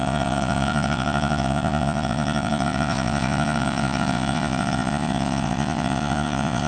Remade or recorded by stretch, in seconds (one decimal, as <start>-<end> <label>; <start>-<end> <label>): 0.0-6.7 remade

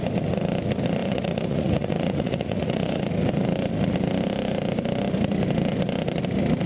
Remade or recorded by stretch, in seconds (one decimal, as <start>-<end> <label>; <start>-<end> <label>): 0.0-1.0 recorded; 1.0-3.0 remade; 3.0-6.7 recorded

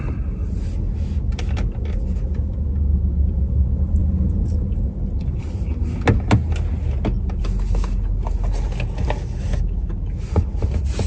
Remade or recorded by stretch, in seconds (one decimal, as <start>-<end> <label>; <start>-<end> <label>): 0.0-4.0 recorded; 4.0-4.7 remade; 4.7-11.1 recorded

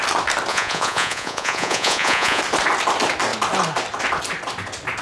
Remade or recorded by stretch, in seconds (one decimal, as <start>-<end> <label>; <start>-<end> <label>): 0.0-0.5 recorded; 0.5-2.4 remade; 2.4-5.0 recorded

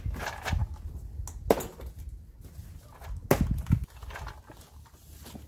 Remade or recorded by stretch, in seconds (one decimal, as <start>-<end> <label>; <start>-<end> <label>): 0.0-5.5 recorded

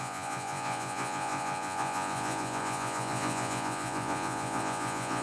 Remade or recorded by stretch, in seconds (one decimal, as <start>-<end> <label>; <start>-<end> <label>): 0.0-5.2 remade

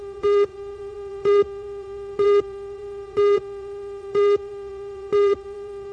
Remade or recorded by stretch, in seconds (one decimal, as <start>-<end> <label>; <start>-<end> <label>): 0.0-5.9 remade

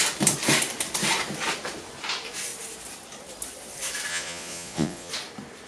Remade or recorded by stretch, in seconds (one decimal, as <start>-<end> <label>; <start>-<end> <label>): 0.0-4.1 recorded; 4.1-5.1 remade; 5.1-5.7 recorded